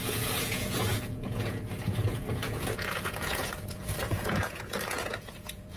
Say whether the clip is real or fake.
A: fake